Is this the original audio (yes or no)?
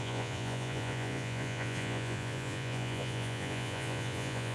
no